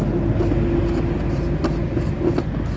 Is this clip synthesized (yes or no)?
no